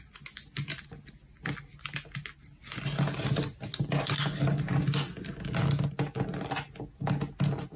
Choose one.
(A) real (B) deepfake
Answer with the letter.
A